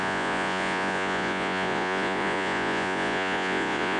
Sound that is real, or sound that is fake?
fake